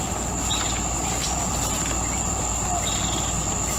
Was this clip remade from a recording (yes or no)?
no